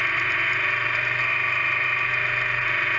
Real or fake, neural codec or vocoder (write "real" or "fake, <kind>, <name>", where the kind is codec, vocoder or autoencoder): real